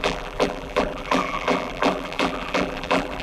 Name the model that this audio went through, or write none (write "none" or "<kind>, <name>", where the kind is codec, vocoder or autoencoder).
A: vocoder, BigVGAN v2